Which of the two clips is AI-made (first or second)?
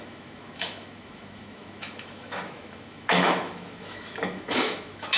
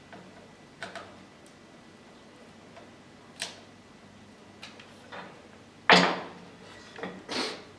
first